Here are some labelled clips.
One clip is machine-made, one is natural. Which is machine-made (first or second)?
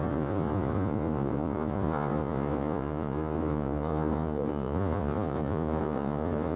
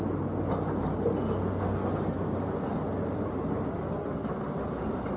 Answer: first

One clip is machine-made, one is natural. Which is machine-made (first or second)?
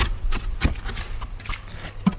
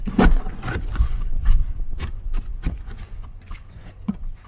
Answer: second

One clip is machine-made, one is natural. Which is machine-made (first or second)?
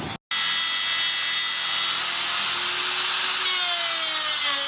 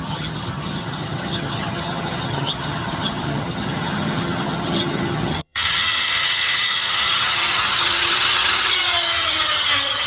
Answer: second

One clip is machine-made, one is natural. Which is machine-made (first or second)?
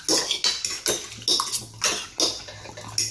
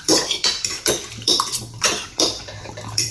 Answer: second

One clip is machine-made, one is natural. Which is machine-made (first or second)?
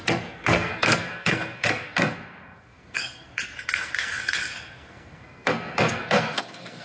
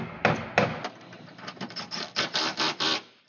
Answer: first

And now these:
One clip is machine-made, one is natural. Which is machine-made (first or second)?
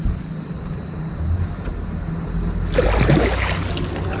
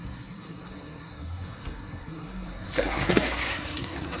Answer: second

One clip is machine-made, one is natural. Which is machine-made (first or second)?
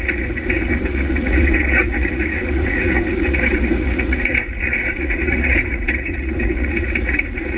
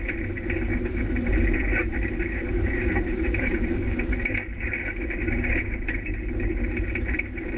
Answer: first